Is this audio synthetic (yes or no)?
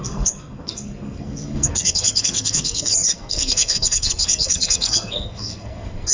yes